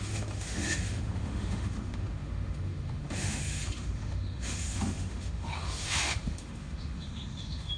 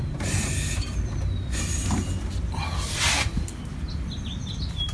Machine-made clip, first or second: first